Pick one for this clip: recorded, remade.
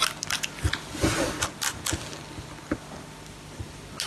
recorded